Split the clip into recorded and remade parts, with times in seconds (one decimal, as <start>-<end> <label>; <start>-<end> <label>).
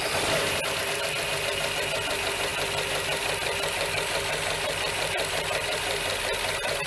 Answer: 0.0-2.5 recorded; 2.5-6.9 remade